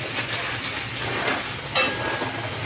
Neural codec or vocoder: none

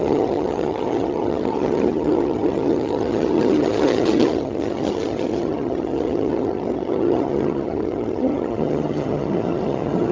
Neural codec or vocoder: vocoder, HiFi-GAN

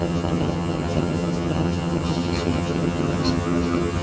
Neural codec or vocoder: vocoder, HiFi-GAN